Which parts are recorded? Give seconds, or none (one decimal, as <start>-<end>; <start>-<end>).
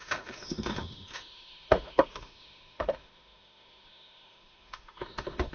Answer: none